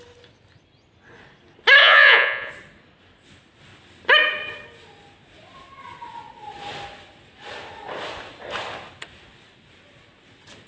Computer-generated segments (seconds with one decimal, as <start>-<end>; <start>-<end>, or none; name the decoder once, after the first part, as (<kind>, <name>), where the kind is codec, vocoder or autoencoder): 1.8-2.5 (vocoder, Vocos)